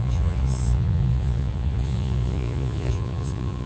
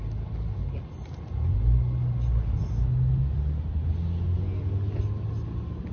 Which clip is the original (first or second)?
second